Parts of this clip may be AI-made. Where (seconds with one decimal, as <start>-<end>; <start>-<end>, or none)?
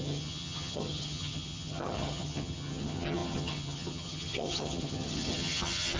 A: 0.0-6.0